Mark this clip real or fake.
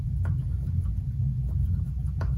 real